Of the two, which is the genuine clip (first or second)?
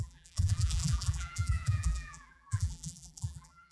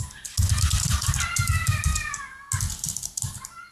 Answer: second